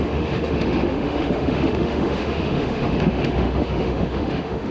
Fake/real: fake